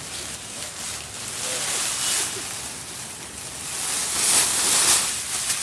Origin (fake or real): real